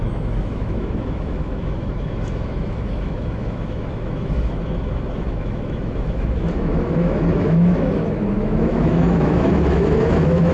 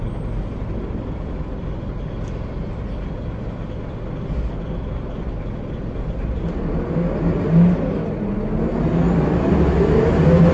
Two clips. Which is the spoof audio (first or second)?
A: first